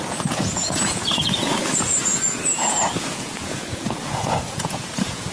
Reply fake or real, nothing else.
fake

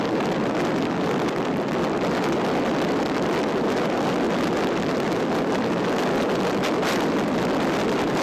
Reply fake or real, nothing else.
real